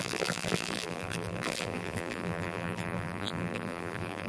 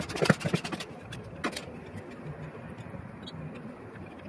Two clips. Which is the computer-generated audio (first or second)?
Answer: first